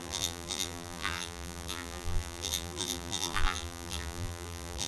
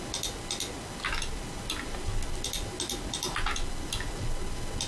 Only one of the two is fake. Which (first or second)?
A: first